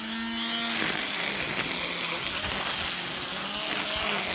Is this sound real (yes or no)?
yes